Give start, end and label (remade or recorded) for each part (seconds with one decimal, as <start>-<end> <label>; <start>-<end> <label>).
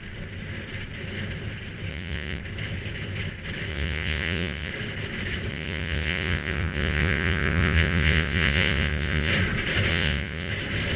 0.0-1.9 recorded; 1.9-2.4 remade; 2.4-3.7 recorded; 3.7-4.7 remade; 4.7-5.5 recorded; 5.5-9.3 remade; 9.3-9.9 recorded; 9.9-10.5 remade; 10.5-11.0 recorded